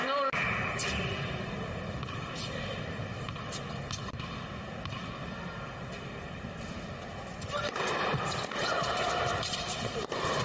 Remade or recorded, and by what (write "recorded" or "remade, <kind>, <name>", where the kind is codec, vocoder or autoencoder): recorded